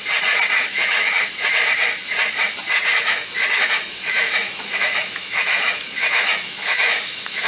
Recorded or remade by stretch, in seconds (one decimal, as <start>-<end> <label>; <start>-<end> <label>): 0.0-0.7 recorded; 0.7-1.2 remade; 1.2-2.9 recorded; 2.9-7.5 remade